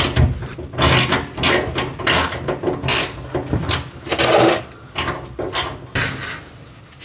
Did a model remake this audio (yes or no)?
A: no